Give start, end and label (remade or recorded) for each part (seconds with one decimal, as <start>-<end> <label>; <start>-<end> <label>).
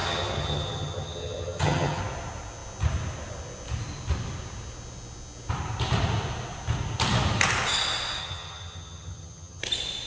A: 0.0-2.0 remade; 2.0-8.2 recorded; 8.2-9.6 remade; 9.6-10.1 recorded